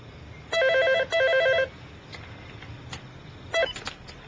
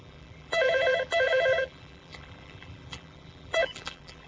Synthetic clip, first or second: second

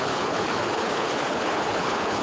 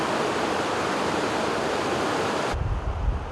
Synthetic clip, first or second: first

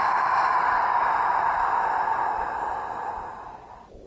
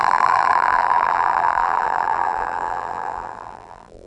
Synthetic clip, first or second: second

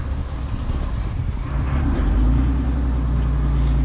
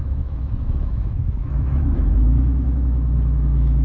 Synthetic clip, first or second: second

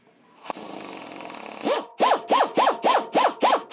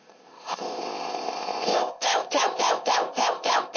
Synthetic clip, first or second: second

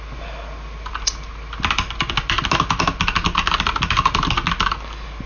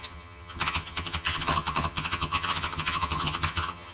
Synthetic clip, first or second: second